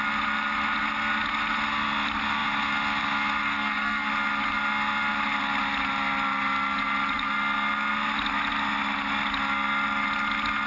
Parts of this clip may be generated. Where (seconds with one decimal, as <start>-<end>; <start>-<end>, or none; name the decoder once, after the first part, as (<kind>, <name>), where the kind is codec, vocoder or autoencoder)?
3.4-4.1 (codec, SNAC)